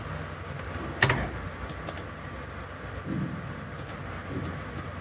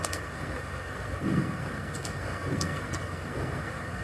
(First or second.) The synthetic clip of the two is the second